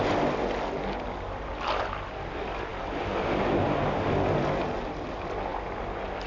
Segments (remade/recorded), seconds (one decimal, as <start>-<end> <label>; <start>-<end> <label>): 0.0-6.3 recorded